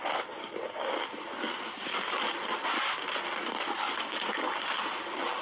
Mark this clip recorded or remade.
recorded